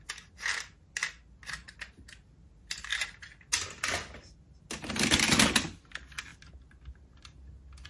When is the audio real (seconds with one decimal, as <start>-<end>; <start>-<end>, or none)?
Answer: 0.0-7.9